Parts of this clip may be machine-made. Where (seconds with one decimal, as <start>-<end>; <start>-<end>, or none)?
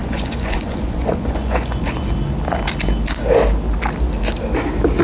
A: 0.0-1.9